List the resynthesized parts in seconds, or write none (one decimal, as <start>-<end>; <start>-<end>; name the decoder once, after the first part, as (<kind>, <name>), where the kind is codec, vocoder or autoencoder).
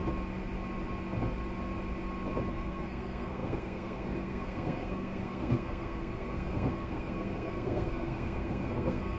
2.5-9.2 (codec, SNAC)